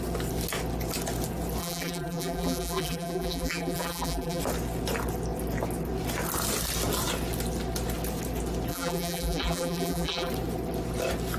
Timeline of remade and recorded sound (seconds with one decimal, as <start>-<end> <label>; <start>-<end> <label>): 0.0-1.6 recorded; 1.6-4.4 remade; 4.4-8.7 recorded; 8.7-10.3 remade; 10.3-11.4 recorded